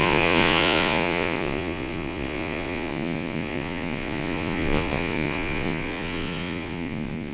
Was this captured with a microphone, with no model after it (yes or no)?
no